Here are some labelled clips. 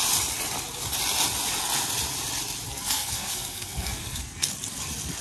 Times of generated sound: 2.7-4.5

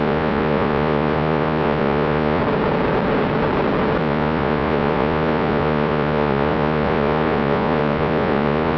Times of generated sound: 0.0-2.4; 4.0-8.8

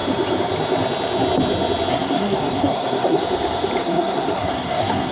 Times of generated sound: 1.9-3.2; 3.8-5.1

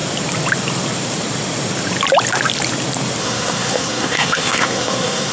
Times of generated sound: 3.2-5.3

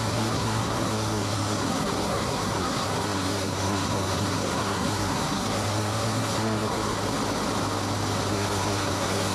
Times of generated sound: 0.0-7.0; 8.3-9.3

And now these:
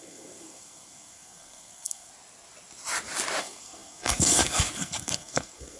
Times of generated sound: 0.0-2.1; 3.4-5.8

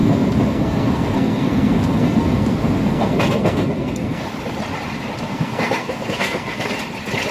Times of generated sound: 0.0-4.2; 5.3-6.7

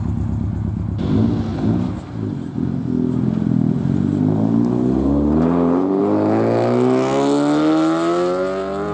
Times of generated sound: none